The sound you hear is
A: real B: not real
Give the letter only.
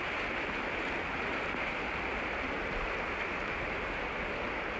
A